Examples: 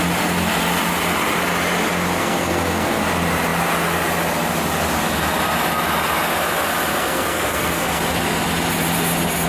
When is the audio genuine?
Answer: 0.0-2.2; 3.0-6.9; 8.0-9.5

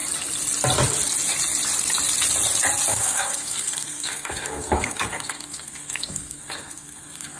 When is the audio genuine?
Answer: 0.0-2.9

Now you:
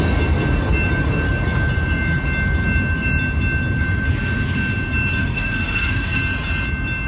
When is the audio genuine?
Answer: 0.0-5.2; 6.2-7.1